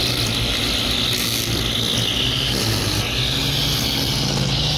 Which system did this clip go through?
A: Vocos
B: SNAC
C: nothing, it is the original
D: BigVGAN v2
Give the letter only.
C